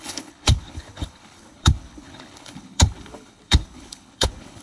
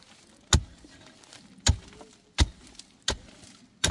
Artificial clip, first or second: first